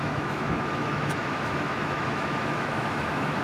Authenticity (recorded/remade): remade